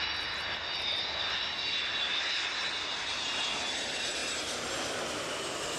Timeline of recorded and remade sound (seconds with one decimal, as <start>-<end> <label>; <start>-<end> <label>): 0.0-5.8 recorded